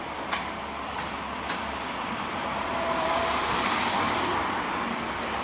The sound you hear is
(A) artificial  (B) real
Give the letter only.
A